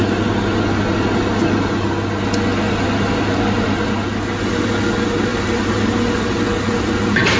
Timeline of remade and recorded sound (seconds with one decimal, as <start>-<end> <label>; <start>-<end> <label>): 0.0-5.3 recorded; 5.3-5.9 remade; 5.9-7.4 recorded